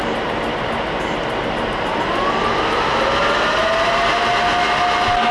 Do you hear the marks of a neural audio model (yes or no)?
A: no